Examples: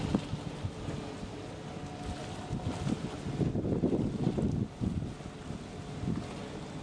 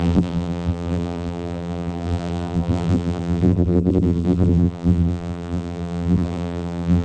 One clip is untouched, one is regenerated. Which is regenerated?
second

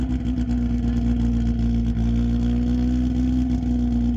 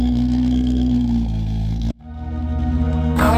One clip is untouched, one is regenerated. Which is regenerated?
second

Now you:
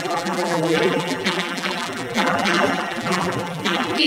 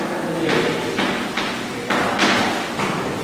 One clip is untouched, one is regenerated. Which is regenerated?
first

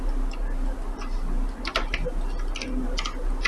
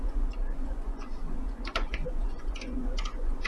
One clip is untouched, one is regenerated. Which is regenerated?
second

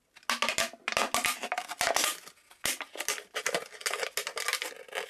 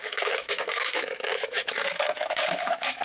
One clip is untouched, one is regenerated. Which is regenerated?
second